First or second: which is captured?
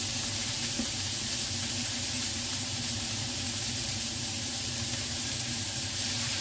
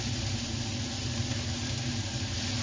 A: second